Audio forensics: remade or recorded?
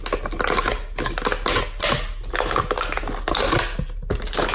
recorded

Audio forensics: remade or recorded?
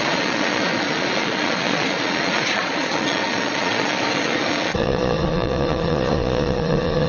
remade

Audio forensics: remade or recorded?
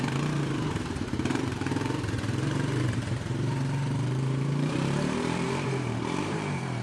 remade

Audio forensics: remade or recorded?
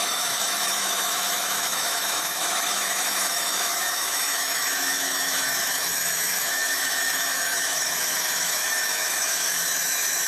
remade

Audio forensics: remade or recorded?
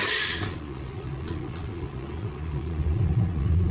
remade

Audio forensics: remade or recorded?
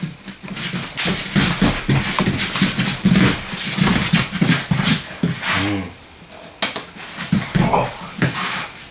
recorded